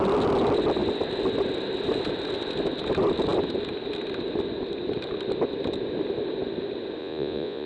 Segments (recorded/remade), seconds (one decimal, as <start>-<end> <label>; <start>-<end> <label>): 0.0-7.0 recorded; 7.0-7.7 remade